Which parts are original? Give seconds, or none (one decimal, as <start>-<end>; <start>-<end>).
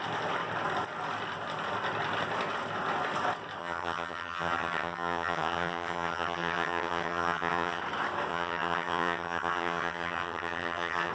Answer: 0.0-3.6; 7.8-8.3